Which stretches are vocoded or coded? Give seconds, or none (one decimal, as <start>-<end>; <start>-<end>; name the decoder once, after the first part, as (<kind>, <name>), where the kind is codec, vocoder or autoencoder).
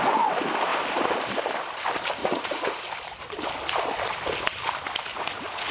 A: 2.2-2.8 (vocoder, Vocos); 5.1-5.7